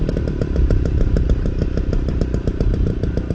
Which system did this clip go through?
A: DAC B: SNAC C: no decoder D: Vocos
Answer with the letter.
C